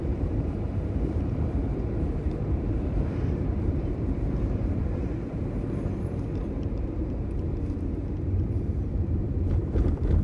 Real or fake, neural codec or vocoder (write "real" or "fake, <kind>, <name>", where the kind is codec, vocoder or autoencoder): fake, vocoder, BigVGAN v2